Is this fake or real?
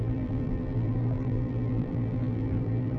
fake